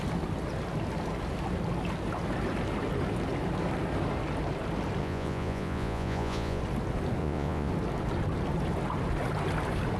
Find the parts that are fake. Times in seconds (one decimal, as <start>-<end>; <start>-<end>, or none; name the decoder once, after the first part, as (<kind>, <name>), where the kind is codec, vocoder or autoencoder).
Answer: 5.0-6.6 (vocoder, Vocos); 7.2-7.7